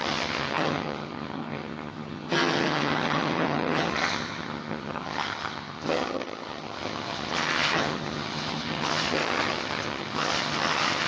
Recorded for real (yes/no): no